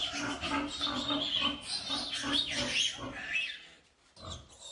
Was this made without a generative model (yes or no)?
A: yes